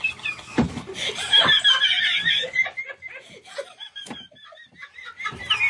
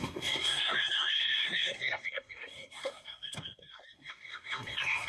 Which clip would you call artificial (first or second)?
second